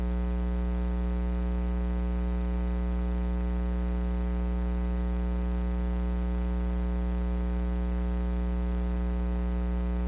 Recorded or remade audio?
recorded